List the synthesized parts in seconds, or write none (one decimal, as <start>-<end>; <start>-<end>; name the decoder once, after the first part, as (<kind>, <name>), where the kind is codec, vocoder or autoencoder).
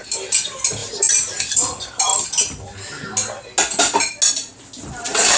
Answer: 0.8-1.4 (vocoder, BigVGAN v2)